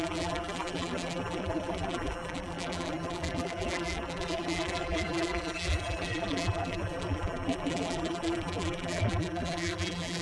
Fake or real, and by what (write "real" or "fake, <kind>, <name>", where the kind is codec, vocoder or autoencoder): fake, vocoder, BigVGAN v2